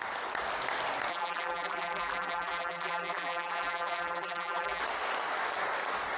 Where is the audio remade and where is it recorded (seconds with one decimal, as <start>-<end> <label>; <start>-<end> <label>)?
0.0-1.1 recorded; 1.1-4.8 remade; 4.8-6.2 recorded